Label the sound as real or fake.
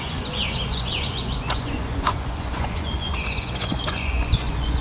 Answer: fake